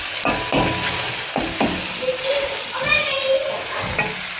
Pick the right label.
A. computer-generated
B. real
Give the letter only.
B